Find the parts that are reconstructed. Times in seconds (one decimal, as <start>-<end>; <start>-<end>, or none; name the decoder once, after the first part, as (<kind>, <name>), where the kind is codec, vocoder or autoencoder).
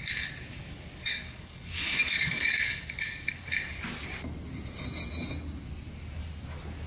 1.1-3.7 (codec, DAC)